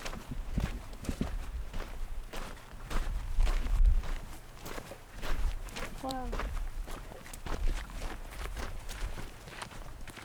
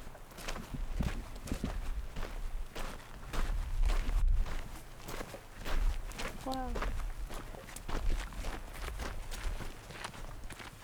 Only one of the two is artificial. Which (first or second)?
first